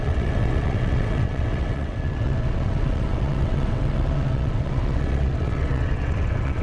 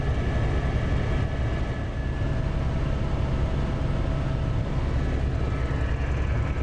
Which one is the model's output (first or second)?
first